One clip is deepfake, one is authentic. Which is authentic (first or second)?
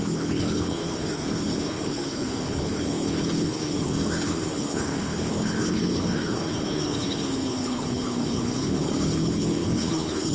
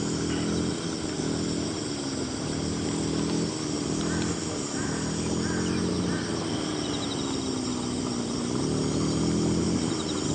second